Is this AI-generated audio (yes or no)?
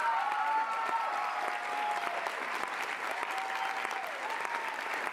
no